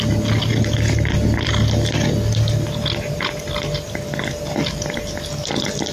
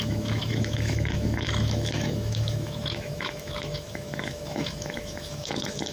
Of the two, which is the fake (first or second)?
second